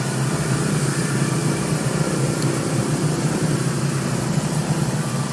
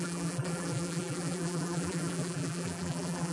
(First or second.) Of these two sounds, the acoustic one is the first